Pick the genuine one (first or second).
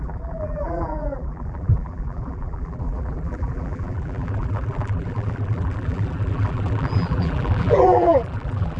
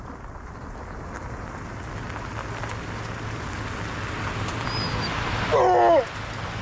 second